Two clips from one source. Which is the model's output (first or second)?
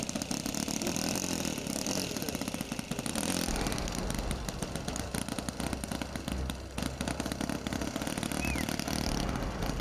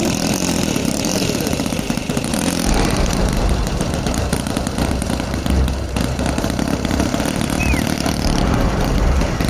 second